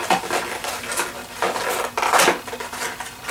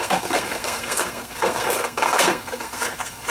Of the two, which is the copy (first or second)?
second